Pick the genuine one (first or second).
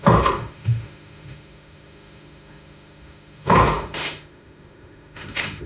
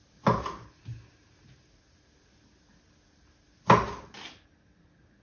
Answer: second